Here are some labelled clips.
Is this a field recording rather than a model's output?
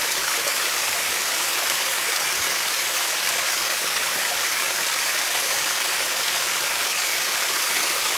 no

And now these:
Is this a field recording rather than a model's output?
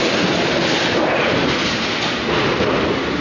yes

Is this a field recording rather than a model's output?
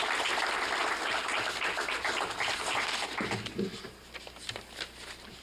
yes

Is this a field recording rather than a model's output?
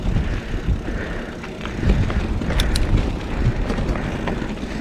yes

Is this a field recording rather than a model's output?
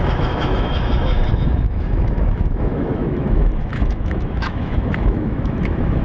no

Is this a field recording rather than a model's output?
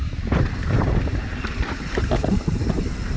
no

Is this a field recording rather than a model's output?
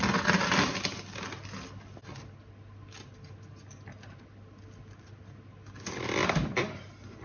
yes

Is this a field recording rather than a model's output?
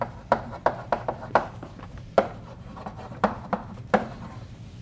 no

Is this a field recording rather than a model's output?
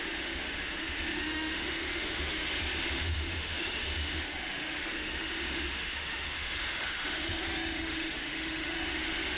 no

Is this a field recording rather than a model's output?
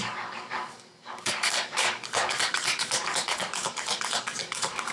no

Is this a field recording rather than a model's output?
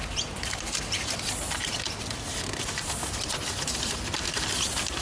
no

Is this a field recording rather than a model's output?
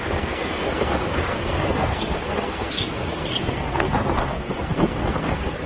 no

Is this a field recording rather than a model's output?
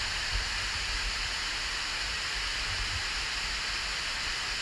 yes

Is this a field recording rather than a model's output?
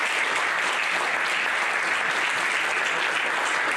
yes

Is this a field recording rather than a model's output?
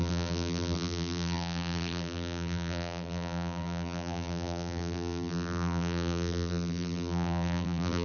no